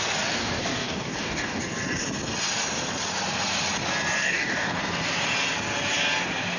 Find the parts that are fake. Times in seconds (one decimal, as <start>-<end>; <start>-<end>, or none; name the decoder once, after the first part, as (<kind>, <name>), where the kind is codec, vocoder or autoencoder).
0.4-1.6 (codec, DAC); 4.2-4.8